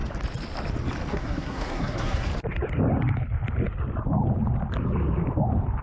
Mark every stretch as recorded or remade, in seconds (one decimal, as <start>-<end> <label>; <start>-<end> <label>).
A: 0.0-1.1 recorded; 1.1-2.3 remade; 2.3-5.8 recorded